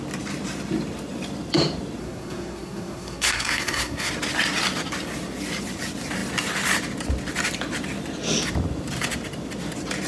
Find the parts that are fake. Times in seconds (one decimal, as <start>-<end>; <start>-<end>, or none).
2.0-4.1